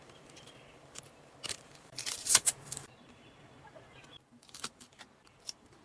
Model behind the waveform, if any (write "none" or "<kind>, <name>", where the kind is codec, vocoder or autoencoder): vocoder, BigVGAN v2